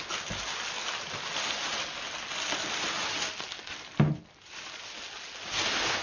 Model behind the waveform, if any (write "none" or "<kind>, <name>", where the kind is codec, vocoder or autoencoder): none